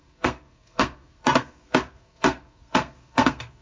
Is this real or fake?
fake